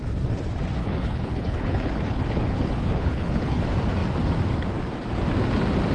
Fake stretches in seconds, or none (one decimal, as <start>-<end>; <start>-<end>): 0.8-3.6